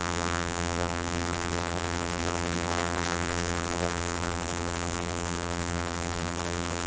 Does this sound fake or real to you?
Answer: fake